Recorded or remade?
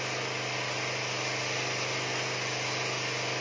recorded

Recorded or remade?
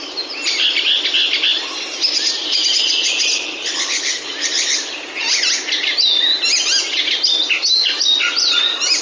recorded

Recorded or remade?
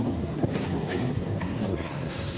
remade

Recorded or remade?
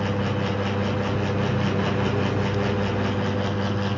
recorded